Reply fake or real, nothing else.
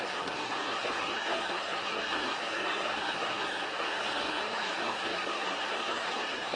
fake